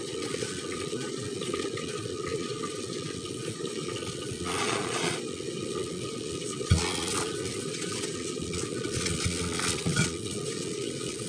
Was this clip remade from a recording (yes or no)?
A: yes